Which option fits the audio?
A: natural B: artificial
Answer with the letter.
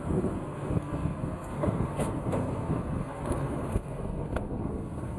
B